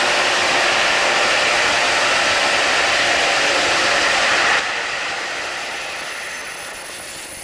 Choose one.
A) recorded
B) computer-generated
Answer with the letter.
A